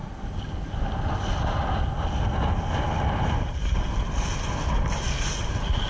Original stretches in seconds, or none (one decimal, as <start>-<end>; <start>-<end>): 0.0-5.9